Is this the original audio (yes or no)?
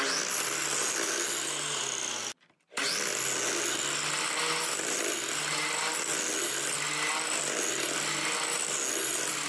yes